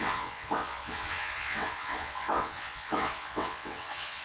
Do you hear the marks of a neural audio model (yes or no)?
yes